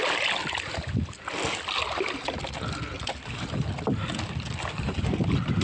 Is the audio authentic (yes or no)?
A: yes